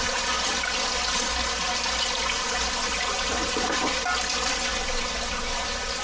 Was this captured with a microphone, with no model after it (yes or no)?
yes